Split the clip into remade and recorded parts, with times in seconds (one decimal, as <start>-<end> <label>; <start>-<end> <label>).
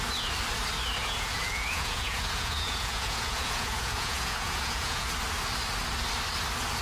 0.0-1.0 recorded; 1.0-5.1 remade; 5.1-6.8 recorded